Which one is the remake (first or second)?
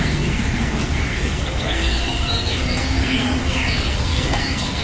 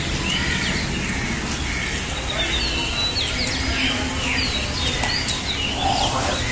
first